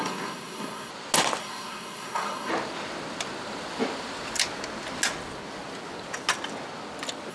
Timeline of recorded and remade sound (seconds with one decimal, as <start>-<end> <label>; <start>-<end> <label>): 0.0-0.9 remade; 0.9-1.4 recorded; 1.4-2.5 remade; 2.5-7.3 recorded